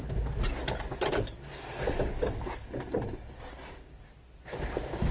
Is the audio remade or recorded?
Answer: recorded